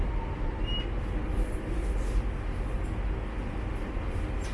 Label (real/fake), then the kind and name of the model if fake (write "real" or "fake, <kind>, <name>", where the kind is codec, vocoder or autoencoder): real